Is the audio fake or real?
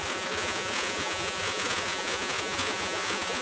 fake